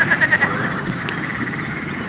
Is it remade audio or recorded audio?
recorded